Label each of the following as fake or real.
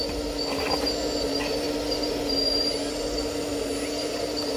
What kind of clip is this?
real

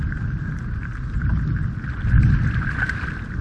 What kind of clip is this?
real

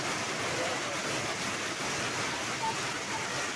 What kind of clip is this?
real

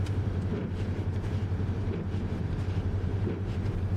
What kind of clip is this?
fake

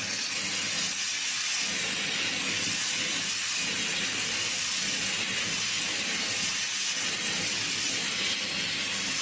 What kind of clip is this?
real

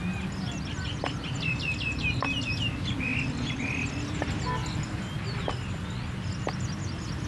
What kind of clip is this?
real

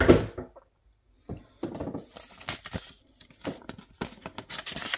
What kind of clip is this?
real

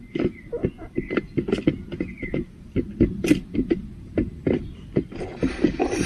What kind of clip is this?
fake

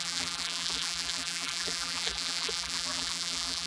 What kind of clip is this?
fake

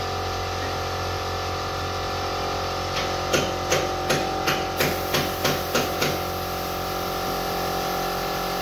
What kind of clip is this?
real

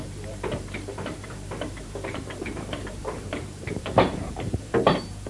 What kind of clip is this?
fake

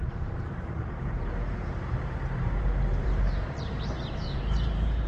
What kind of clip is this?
fake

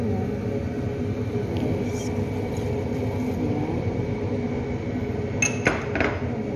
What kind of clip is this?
real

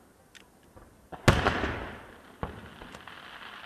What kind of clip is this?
real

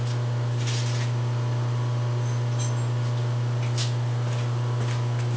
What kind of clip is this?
real